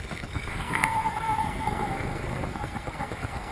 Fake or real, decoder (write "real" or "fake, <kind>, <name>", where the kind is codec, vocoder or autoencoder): fake, codec, SNAC